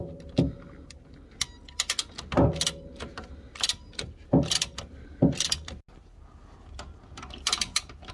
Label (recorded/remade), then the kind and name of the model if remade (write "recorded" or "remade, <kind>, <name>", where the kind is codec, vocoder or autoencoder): recorded